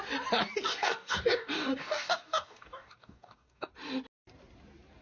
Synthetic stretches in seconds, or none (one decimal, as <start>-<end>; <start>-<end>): 0.7-3.7